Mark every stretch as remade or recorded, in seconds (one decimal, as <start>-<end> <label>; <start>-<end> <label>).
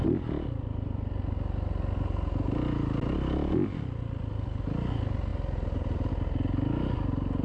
0.0-7.4 recorded